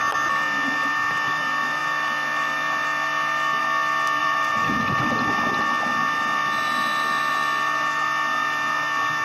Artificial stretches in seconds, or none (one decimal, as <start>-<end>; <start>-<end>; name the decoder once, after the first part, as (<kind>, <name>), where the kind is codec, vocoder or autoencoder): 4.2-5.0 (vocoder, BigVGAN v2)